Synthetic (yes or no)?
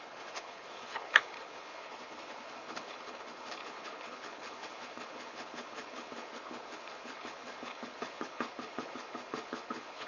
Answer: yes